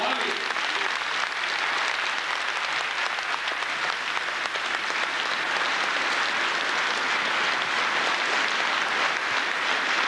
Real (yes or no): yes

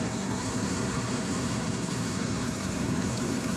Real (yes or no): no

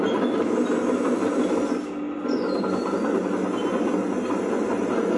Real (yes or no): yes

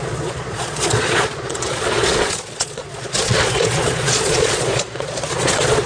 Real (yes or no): no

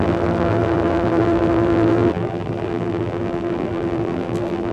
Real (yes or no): no